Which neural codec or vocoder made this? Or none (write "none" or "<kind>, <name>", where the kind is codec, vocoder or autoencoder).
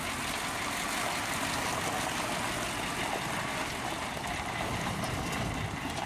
vocoder, BigVGAN v2